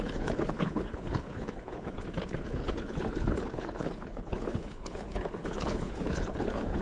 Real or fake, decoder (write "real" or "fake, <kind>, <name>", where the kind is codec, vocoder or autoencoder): fake, codec, HILCodec